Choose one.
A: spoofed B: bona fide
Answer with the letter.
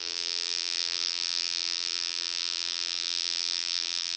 A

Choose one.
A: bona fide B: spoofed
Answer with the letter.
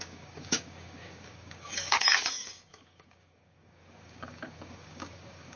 B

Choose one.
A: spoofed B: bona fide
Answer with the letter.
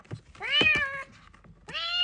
B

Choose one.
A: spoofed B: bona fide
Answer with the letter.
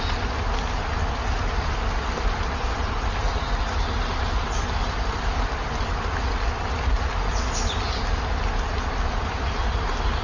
B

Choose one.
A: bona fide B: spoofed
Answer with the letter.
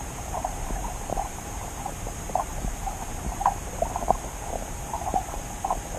B